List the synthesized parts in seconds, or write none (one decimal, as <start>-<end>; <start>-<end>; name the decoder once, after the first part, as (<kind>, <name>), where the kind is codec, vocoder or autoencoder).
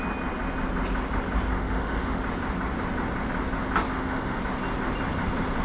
1.5-2.2 (autoencoder, DAC-VAE); 3.9-4.4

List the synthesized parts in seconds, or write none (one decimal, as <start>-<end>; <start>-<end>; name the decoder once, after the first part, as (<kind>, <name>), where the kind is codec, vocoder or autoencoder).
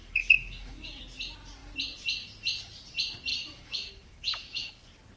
0.0-1.0 (autoencoder, DAC-VAE); 3.3-4.7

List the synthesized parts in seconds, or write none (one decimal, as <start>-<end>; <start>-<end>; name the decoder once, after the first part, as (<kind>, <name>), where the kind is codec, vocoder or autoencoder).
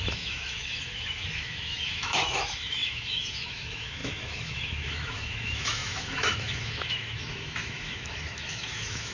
0.0-9.1 (autoencoder, DAC-VAE)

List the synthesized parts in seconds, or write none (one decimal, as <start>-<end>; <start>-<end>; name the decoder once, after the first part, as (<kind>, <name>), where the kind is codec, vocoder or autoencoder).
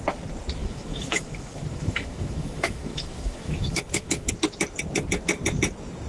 0.6-4.3 (autoencoder, DAC-VAE)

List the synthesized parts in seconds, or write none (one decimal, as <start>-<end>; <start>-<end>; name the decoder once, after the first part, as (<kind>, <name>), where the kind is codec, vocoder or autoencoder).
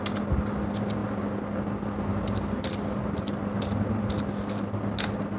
none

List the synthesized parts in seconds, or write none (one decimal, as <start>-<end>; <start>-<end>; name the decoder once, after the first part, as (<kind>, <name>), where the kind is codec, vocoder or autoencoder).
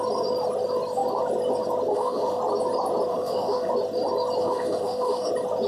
1.9-2.4 (autoencoder, DAC-VAE); 3.1-3.7; 4.4-5.3